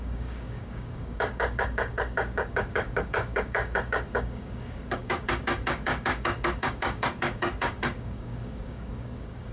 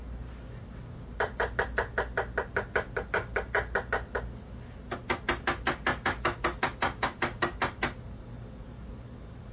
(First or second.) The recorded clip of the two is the second